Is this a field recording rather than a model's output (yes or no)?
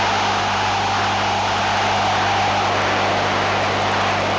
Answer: yes